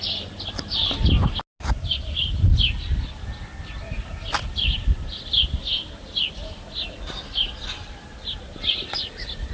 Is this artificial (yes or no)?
no